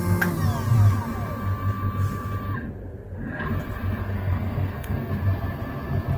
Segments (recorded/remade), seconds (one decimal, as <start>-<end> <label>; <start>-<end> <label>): 0.0-4.0 recorded; 4.0-5.1 remade; 5.1-6.2 recorded